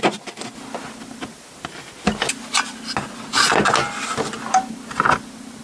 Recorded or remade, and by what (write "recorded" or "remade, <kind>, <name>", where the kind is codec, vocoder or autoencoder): recorded